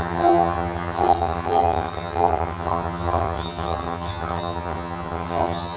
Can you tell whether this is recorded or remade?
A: remade